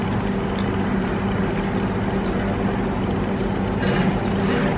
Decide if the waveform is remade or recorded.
recorded